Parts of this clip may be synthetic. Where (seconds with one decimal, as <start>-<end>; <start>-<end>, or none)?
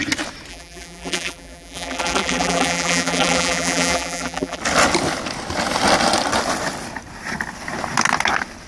0.5-4.6